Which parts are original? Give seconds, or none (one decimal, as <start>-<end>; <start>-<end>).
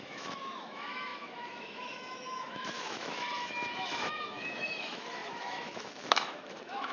none